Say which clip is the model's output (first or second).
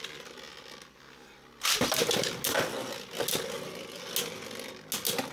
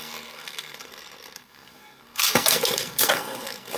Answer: second